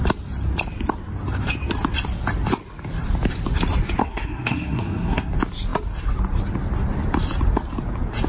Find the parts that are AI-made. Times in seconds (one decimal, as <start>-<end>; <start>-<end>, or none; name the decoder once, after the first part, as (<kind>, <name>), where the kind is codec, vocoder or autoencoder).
4.0-5.3 (codec, SNAC)